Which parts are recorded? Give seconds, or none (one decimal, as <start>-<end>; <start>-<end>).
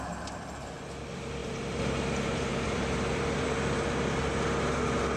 0.0-1.4; 4.2-5.2